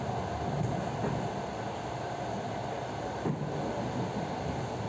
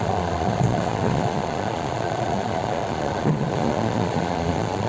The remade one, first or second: second